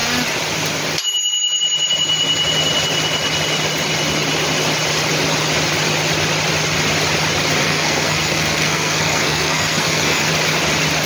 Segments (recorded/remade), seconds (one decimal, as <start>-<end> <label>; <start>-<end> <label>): 0.0-7.6 recorded; 7.6-10.3 remade; 10.3-11.1 recorded